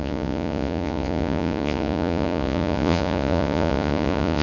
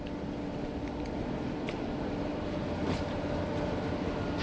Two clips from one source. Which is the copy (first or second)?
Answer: first